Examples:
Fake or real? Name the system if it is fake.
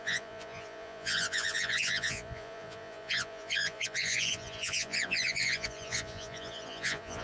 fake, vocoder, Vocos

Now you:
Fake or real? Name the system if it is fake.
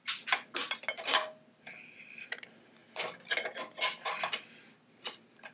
real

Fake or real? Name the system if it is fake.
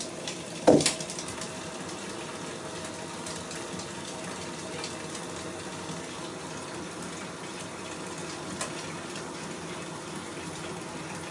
real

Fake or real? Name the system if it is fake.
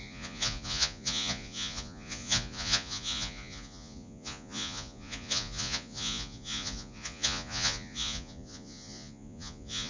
fake, vocoder, Vocos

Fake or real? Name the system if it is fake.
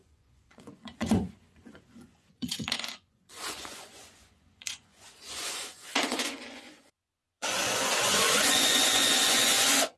fake, vocoder, Vocos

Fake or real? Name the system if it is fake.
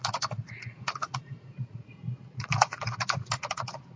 fake, vocoder, Vocos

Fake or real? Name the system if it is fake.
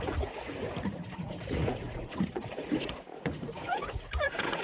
fake, vocoder, Vocos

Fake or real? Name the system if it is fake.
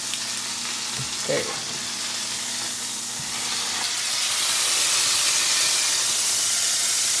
real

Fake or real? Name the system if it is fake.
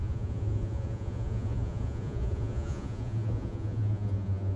fake, vocoder, Vocos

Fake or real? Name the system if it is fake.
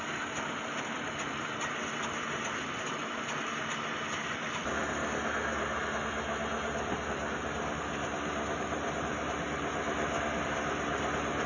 real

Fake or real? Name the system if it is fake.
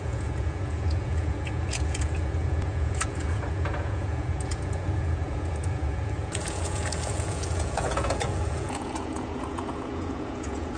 fake, vocoder, Vocos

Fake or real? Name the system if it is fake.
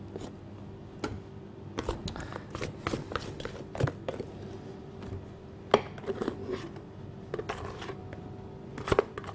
real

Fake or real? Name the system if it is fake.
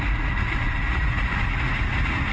fake, vocoder, Vocos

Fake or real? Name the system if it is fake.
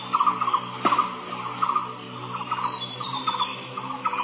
real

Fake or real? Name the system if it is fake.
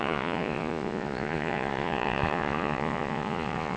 fake, vocoder, Vocos